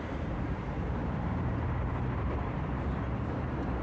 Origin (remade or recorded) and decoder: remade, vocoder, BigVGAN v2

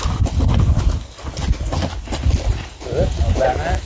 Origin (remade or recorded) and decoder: recorded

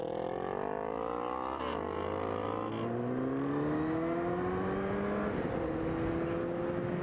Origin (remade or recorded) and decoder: recorded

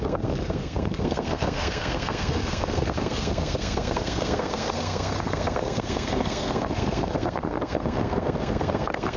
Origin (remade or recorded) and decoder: remade, codec, SNAC